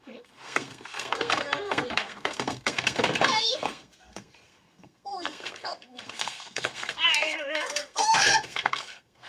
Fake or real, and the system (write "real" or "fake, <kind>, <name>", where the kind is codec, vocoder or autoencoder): fake, codec, SNAC